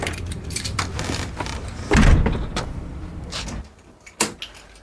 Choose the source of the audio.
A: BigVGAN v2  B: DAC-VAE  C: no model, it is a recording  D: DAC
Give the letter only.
C